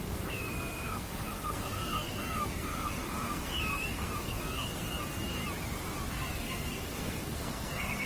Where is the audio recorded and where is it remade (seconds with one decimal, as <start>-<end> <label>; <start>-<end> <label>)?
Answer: 0.0-5.4 remade; 5.4-6.1 recorded; 6.1-8.1 remade